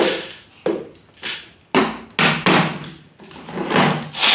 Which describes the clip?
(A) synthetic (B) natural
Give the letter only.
B